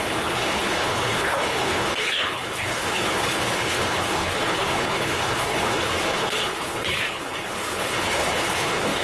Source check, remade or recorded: remade